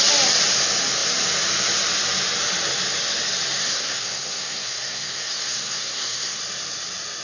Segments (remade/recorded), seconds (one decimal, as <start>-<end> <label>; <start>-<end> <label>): 0.0-3.6 recorded; 3.6-6.4 remade; 6.4-7.2 recorded